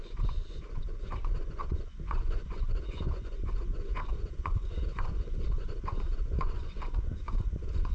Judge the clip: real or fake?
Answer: fake